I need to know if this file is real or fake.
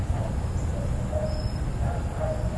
real